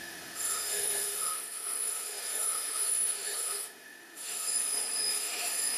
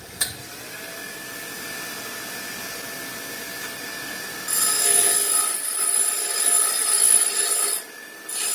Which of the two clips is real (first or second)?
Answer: second